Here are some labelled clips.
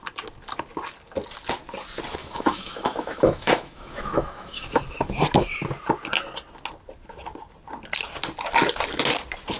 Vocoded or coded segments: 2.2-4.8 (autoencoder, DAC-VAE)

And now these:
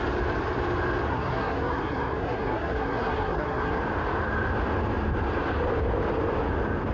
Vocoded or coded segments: 1.1-3.8 (codec, SNAC)

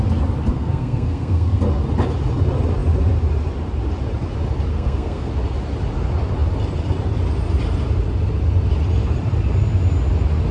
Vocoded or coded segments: 0.5-1.6 (codec, SNAC); 4.7-5.3

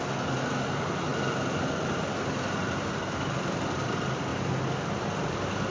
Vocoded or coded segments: 2.6-3.9 (vocoder, BigVGAN v2)